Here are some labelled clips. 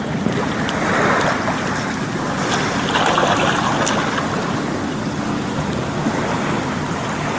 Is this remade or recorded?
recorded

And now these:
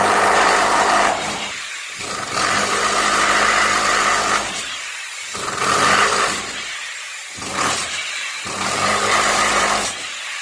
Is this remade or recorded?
remade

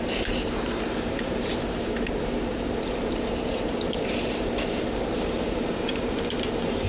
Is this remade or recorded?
remade